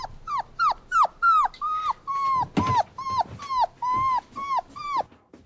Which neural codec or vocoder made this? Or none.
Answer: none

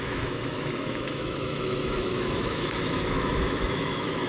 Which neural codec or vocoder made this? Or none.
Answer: autoencoder, DAC-VAE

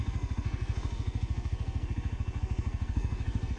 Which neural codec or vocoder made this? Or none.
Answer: codec, SNAC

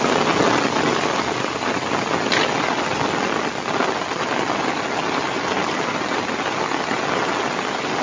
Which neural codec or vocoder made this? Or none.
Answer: none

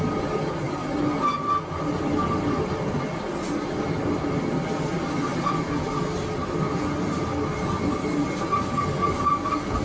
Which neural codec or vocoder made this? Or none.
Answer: none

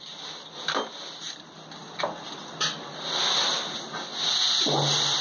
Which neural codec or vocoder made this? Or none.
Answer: none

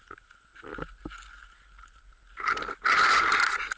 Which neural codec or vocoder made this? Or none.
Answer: none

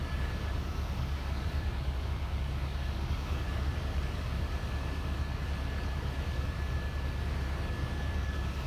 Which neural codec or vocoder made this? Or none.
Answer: codec, DAC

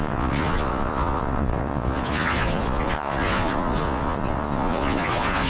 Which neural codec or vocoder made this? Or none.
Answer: vocoder, Vocos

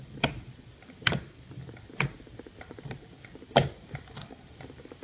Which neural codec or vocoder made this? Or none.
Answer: none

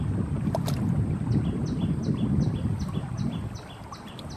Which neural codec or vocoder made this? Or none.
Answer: none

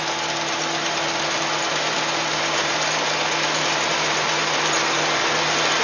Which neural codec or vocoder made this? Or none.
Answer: none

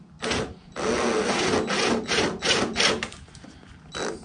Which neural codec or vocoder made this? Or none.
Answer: none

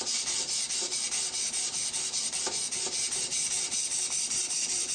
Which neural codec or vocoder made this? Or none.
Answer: none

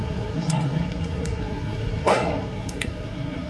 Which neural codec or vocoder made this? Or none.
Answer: codec, SNAC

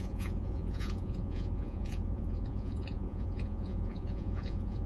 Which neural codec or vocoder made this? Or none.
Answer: vocoder, Vocos